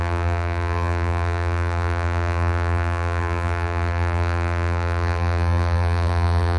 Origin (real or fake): fake